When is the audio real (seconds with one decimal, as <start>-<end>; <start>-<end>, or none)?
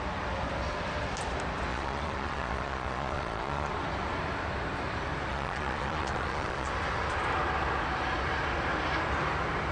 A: 0.0-1.7; 3.7-5.3; 6.7-9.7